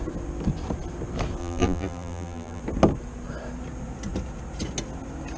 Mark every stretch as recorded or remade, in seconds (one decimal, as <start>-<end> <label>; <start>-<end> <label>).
0.0-1.4 recorded; 1.4-2.6 remade; 2.6-5.4 recorded